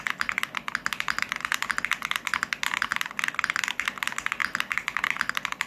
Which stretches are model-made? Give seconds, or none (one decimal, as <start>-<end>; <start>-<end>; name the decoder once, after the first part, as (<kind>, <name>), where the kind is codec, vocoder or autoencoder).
4.4-5.2 (vocoder, BigVGAN v2)